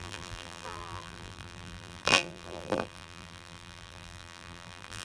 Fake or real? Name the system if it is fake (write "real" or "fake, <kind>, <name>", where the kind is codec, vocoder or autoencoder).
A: fake, vocoder, BigVGAN v2